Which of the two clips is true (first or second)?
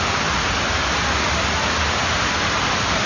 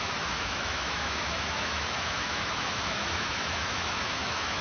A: first